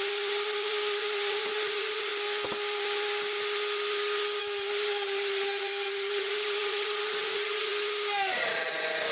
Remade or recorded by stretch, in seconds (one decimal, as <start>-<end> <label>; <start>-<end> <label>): 0.0-2.1 remade; 2.1-4.4 recorded; 4.4-7.7 remade; 7.7-8.7 recorded; 8.7-9.1 remade